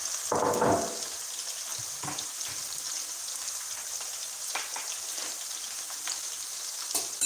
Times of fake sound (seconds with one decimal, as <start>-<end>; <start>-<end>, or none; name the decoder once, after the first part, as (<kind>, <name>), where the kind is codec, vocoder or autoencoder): none